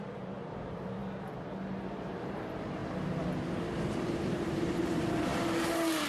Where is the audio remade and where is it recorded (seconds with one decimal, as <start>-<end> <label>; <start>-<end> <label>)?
0.0-1.0 remade; 1.0-2.0 recorded; 2.0-2.8 remade; 2.8-3.7 recorded; 3.7-6.1 remade